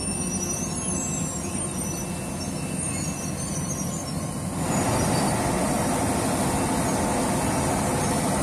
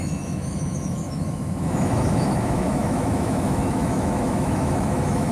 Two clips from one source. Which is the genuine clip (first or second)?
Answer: first